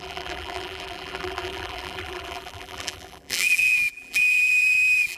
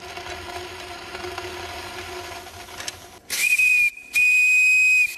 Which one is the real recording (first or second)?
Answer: second